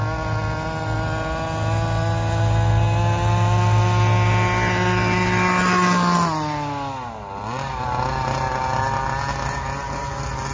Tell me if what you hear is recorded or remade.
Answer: recorded